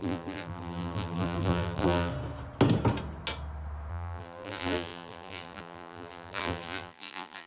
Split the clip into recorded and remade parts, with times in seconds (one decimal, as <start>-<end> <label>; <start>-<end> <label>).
0.0-2.1 remade; 2.1-3.9 recorded; 3.9-7.5 remade